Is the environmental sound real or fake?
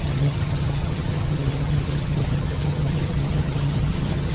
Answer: fake